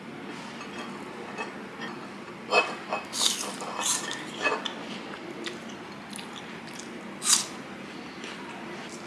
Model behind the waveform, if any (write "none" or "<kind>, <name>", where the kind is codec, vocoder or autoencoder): none